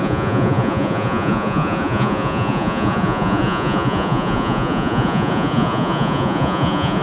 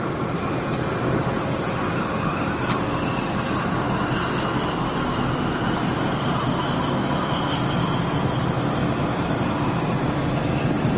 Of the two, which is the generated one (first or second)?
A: first